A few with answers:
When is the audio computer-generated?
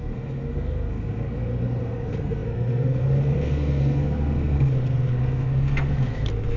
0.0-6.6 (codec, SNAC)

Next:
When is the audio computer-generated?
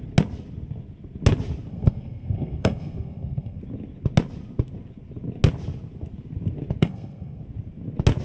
1.7-3.6 (codec, SNAC); 6.8-7.4